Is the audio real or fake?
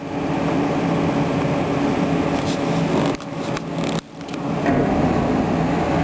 real